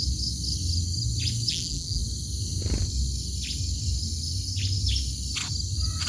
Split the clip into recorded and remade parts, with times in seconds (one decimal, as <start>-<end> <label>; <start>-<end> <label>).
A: 0.0-1.5 recorded; 1.5-2.0 remade; 2.0-6.1 recorded